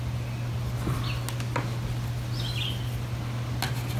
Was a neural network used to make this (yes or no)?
no